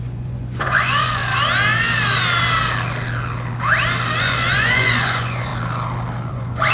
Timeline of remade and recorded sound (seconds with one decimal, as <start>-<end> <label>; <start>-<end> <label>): 0.0-1.2 remade; 1.2-4.2 recorded; 4.2-5.5 remade; 5.5-6.3 recorded; 6.3-6.7 remade